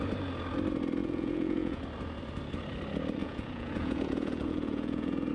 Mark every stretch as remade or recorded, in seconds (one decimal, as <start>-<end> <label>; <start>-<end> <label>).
0.0-1.0 recorded; 1.0-1.8 remade; 1.8-3.2 recorded; 3.2-5.3 remade